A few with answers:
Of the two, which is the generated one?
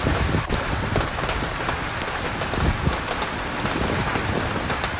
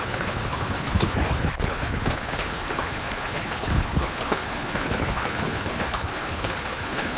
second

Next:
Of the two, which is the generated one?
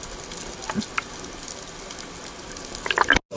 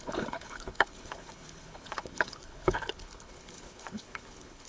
second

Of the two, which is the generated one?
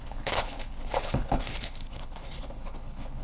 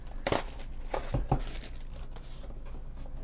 first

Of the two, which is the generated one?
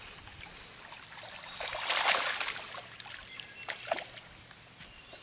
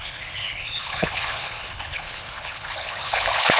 second